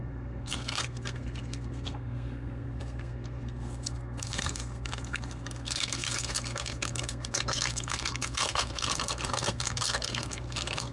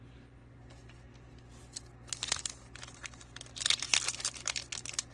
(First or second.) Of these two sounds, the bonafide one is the second